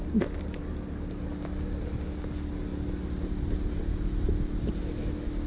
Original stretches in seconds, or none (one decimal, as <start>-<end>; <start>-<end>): 0.0-5.5